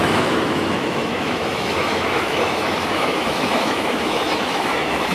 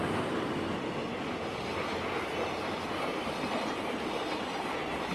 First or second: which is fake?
first